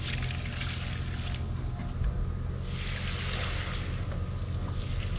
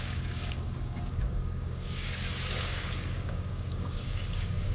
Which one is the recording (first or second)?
first